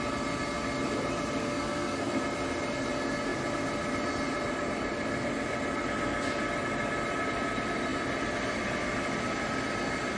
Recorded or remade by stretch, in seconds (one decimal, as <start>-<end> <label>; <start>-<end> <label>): 0.0-1.4 recorded; 1.4-2.2 remade; 2.2-10.2 recorded